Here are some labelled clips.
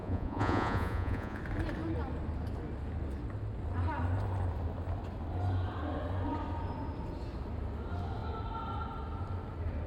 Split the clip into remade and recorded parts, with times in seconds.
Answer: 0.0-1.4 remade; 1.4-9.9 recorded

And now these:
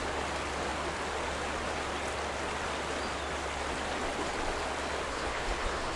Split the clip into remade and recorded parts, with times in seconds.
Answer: 0.0-5.1 recorded; 5.1-6.0 remade

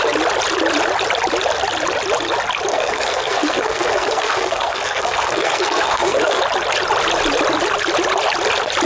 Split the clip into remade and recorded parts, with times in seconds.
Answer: 0.0-2.7 recorded; 2.7-6.4 remade; 6.4-8.9 recorded

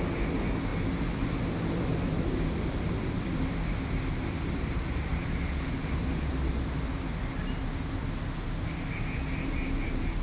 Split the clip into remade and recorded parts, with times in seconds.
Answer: 0.0-10.2 recorded

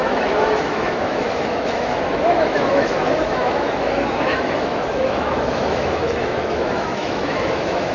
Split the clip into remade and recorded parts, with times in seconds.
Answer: 0.0-7.9 remade

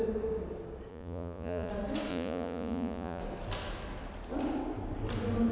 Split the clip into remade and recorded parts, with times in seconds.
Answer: 0.0-0.9 recorded; 0.9-1.7 remade; 1.7-2.1 recorded; 2.1-3.2 remade; 3.2-5.5 recorded

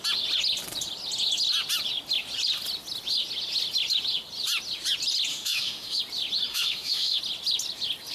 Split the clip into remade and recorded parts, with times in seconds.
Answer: 0.0-5.3 recorded; 5.3-6.0 remade; 6.0-6.5 recorded; 6.5-7.2 remade; 7.2-8.1 recorded

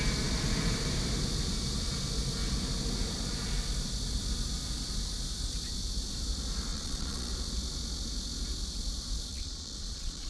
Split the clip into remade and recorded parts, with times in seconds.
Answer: 0.0-6.7 recorded; 6.7-7.3 remade; 7.3-9.3 recorded; 9.3-10.3 remade